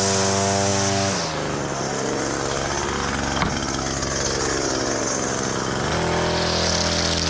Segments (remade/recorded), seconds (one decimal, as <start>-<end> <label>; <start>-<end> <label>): 0.0-7.3 recorded